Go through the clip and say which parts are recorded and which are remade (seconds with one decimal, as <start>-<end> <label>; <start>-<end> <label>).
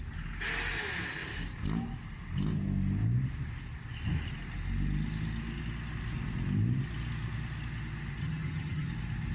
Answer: 0.0-8.2 recorded; 8.2-8.9 remade; 8.9-9.3 recorded